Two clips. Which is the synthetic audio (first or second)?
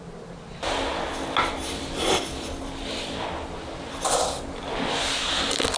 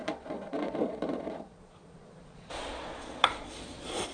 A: second